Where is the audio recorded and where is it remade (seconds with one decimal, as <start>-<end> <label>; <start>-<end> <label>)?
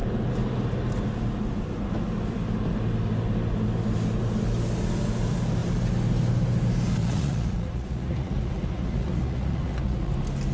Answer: 0.0-7.0 recorded; 7.0-10.1 remade; 10.1-10.5 recorded